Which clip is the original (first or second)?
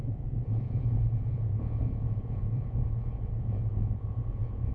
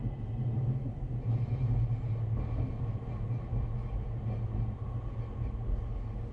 second